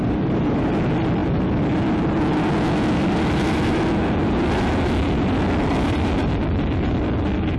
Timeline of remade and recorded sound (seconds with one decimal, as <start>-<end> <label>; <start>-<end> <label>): 0.0-7.6 recorded